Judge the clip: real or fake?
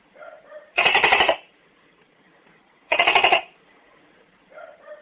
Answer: fake